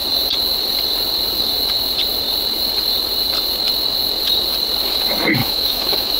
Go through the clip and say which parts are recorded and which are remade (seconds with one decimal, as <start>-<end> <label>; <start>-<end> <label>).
0.0-5.4 recorded; 5.4-6.2 remade